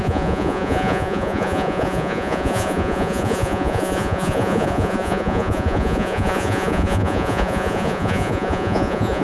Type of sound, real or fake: fake